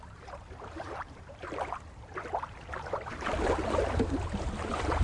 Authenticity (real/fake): fake